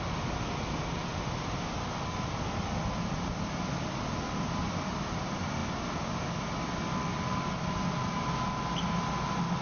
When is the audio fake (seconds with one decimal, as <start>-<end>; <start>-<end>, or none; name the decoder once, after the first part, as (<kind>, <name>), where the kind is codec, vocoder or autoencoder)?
none